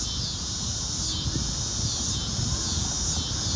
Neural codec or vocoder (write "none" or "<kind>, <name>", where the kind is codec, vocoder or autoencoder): none